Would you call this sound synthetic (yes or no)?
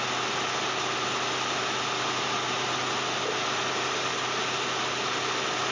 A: no